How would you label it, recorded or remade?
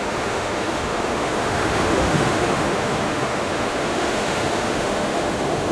remade